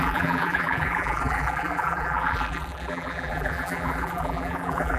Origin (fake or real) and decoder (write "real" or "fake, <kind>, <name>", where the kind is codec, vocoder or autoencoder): fake, vocoder, BigVGAN v2